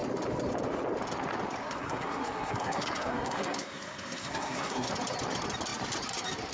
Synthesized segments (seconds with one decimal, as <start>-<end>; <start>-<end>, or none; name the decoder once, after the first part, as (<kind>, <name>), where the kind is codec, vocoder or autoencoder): 1.6-4.9 (codec, SNAC)